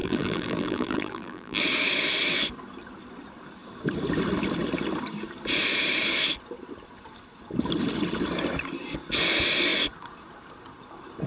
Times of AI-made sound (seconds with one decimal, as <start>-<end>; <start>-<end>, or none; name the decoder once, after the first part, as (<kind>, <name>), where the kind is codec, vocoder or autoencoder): 0.0-1.6 (vocoder, BigVGAN v2)

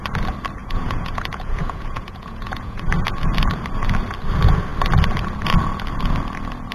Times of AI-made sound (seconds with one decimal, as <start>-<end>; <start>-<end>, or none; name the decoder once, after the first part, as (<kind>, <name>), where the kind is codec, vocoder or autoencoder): 0.6-2.8 (vocoder, Vocos)

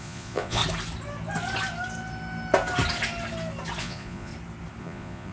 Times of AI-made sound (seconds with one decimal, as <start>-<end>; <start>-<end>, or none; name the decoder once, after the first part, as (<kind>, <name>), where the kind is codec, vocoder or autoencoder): 0.0-0.6 (vocoder, Vocos); 3.8-4.3; 4.8-5.3

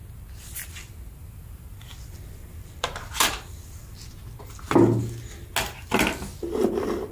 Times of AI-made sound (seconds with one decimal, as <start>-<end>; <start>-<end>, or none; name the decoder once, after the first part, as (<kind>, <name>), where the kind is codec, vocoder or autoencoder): 1.2-3.8 (vocoder, BigVGAN v2)

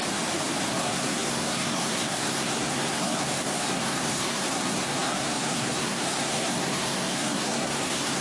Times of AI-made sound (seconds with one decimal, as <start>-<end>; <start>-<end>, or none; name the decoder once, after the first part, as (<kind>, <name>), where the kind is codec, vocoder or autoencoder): 0.7-8.2 (codec, SNAC)

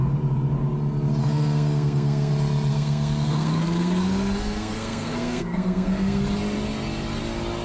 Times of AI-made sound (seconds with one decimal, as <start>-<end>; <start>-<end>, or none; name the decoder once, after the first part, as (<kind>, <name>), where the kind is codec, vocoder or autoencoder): 1.2-2.3 (codec, SNAC); 2.7-6.2